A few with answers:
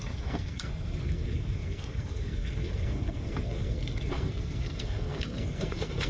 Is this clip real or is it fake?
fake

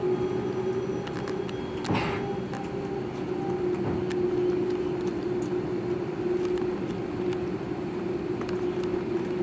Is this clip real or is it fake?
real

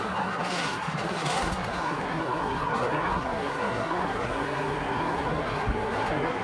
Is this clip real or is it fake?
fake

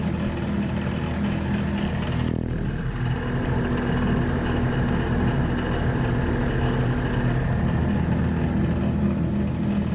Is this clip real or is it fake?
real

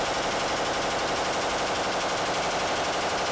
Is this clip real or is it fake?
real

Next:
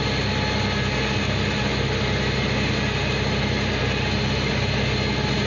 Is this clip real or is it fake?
real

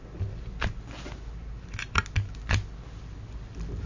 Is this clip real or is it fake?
real